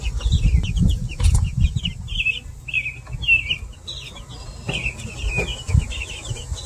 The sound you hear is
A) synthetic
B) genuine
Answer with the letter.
B